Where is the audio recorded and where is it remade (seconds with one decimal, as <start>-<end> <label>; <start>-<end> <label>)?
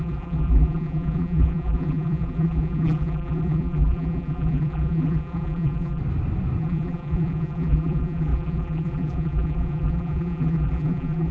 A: 0.0-6.0 remade; 6.0-6.6 recorded; 6.6-11.3 remade